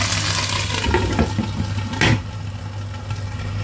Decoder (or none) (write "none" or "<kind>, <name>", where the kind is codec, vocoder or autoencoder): none